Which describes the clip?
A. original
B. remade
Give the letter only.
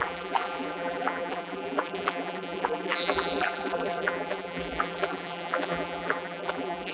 B